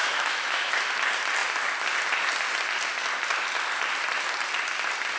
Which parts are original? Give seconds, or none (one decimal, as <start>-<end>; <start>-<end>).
0.7-5.2